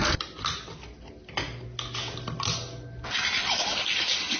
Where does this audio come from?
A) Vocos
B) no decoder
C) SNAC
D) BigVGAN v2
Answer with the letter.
B